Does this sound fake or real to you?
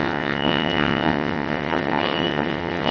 fake